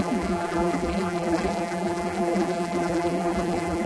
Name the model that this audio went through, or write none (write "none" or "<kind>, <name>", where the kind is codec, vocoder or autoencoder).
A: vocoder, BigVGAN v2